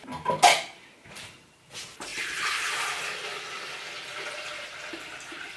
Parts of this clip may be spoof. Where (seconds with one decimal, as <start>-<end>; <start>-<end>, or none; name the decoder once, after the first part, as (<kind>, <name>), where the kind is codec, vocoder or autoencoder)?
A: 2.1-2.9 (vocoder, BigVGAN v2)

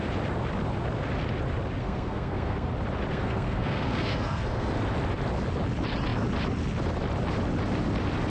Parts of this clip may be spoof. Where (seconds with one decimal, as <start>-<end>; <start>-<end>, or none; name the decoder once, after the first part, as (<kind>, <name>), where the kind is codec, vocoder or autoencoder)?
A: 1.8-2.7 (codec, SNAC); 3.1-4.7